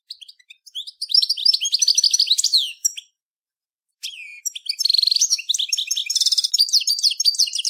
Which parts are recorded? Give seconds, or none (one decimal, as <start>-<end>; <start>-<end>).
1.4-3.9